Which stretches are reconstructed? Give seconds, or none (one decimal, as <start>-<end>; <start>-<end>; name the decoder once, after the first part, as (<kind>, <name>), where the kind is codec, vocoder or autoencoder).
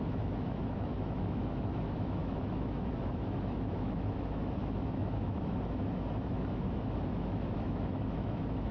0.0-8.7 (autoencoder, DAC-VAE)